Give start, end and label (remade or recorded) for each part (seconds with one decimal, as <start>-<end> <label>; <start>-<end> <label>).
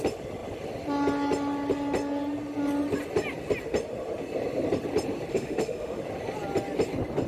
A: 0.0-5.3 recorded; 5.3-6.0 remade; 6.0-7.3 recorded